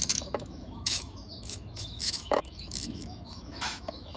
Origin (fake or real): fake